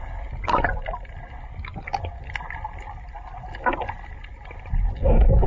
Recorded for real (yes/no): yes